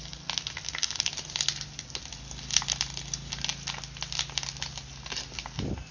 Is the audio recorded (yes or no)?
yes